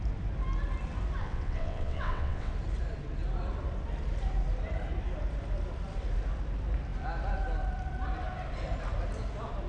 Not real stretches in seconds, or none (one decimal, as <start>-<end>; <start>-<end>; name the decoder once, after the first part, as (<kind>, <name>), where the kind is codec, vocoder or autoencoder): 1.2-2.5 (vocoder, WaveNeXt)